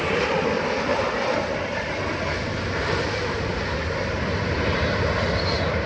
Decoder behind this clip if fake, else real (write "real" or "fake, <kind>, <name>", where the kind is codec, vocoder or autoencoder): real